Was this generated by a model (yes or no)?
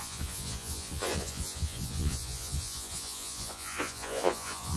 yes